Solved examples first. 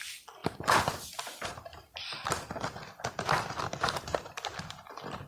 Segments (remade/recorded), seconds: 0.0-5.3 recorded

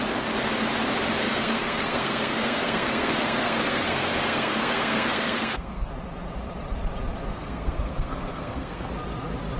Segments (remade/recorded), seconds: 0.0-1.2 recorded; 1.2-5.9 remade; 5.9-7.3 recorded; 7.3-8.9 remade; 8.9-9.6 recorded

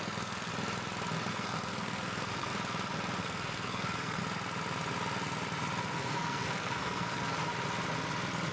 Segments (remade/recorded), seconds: 0.0-0.5 remade; 0.5-1.3 recorded; 1.3-2.5 remade; 2.5-3.2 recorded; 3.2-4.2 remade; 4.2-5.8 recorded; 5.8-7.5 remade; 7.5-8.5 recorded

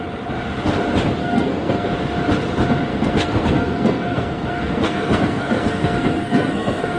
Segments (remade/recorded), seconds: 0.0-1.2 recorded; 1.2-1.9 remade; 1.9-2.9 recorded; 2.9-7.0 remade

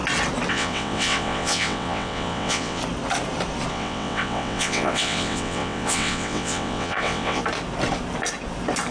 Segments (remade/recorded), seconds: 0.0-0.5 recorded; 0.5-2.8 remade; 2.8-3.7 recorded; 3.7-7.4 remade; 7.4-8.9 recorded

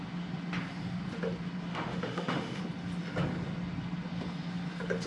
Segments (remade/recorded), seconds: 0.0-1.7 recorded; 1.7-2.6 remade; 2.6-5.1 recorded